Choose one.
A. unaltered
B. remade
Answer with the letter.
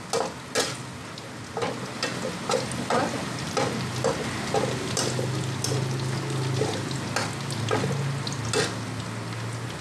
A